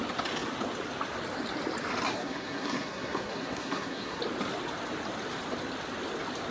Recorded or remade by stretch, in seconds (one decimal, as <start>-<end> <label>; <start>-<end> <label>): 0.0-2.1 recorded; 2.1-4.2 remade; 4.2-6.5 recorded